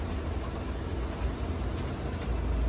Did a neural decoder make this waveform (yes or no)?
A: no